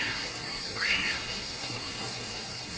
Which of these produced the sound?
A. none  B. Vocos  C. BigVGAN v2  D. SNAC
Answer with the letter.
D